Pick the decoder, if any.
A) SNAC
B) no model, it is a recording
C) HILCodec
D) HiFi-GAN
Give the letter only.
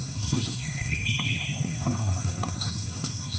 A